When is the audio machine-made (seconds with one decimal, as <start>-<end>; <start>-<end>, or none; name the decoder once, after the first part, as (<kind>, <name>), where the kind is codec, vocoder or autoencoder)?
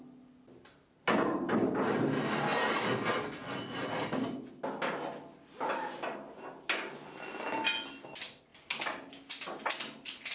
none